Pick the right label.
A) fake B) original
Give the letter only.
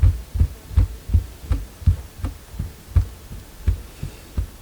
B